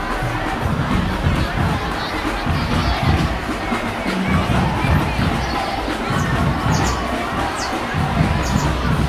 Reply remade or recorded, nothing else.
recorded